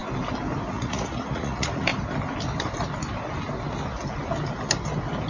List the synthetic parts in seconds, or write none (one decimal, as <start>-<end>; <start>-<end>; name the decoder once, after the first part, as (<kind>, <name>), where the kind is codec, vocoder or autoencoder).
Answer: 0.7-1.9 (vocoder, Vocos)